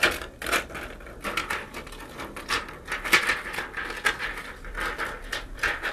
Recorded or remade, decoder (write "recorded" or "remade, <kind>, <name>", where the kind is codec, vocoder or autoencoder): recorded